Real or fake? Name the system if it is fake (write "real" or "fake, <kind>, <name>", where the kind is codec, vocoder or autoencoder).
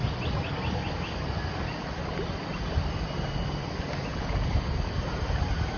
real